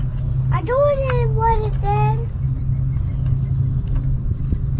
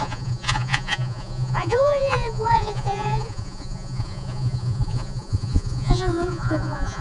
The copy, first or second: second